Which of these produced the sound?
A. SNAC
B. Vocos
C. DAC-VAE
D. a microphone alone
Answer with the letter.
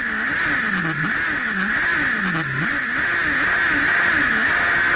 D